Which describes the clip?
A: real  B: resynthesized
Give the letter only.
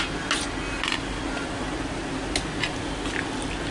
A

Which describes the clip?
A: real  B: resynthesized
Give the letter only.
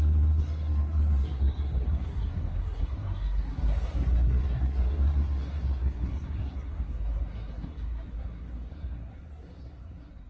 B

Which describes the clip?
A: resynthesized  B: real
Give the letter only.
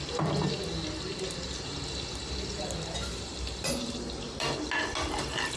B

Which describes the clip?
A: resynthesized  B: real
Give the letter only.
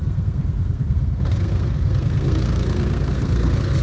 A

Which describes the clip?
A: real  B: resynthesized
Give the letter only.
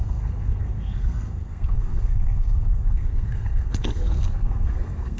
B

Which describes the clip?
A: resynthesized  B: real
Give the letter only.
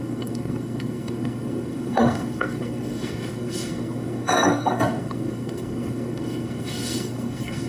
A